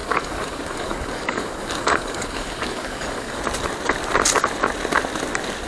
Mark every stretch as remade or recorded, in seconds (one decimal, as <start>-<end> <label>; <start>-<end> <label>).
0.0-3.4 remade; 3.4-5.7 recorded